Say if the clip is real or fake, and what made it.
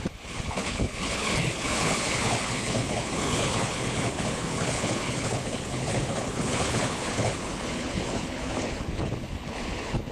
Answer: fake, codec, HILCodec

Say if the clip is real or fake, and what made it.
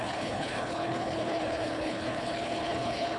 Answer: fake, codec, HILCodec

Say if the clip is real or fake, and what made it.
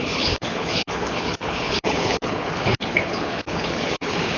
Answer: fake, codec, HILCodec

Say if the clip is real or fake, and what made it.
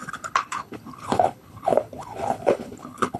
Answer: fake, codec, HILCodec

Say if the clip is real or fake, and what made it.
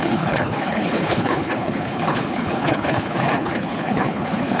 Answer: fake, codec, HILCodec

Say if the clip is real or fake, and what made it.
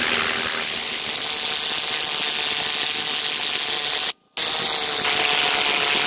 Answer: real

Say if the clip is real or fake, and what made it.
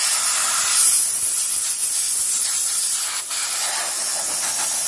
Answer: real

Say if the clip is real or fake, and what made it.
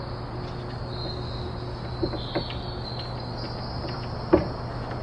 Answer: real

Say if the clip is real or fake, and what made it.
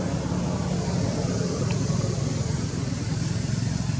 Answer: real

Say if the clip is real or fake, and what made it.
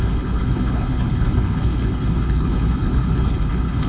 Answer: fake, codec, HILCodec